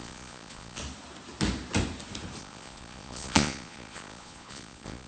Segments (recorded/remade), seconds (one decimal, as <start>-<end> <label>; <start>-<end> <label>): 0.0-0.8 remade; 0.8-2.4 recorded; 2.4-5.1 remade